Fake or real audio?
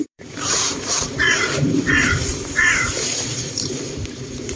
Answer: fake